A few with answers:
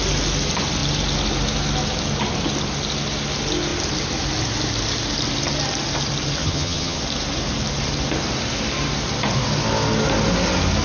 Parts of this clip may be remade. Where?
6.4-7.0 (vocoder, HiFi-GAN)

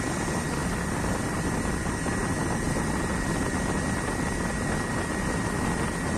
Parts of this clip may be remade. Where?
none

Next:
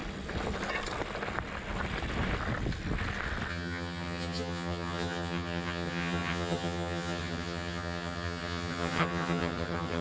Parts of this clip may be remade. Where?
3.5-10.0 (vocoder, HiFi-GAN)